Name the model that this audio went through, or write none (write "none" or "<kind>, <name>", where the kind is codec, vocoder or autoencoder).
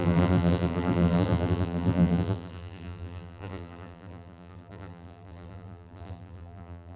vocoder, BigVGAN v2